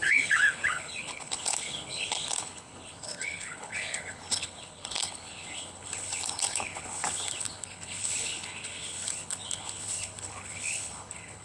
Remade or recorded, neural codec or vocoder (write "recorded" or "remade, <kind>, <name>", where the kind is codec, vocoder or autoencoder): remade, codec, HILCodec